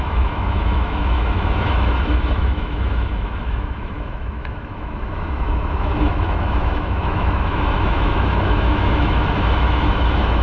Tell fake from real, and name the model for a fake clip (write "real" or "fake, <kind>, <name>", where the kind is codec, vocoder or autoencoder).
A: fake, autoencoder, DAC-VAE